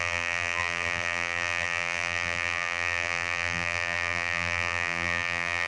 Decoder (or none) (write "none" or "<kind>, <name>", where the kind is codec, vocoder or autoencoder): vocoder, BigVGAN v2